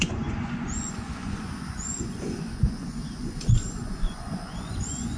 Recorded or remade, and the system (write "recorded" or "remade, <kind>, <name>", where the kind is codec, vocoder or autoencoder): remade, vocoder, Vocos